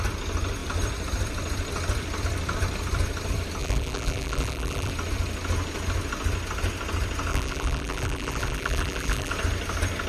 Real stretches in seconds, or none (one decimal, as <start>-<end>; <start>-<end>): 0.0-3.6; 4.9-7.3; 9.3-10.1